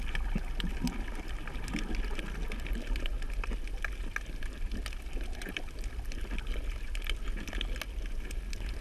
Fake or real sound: real